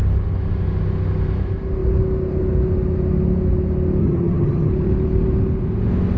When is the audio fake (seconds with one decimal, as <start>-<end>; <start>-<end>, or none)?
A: 4.0-4.7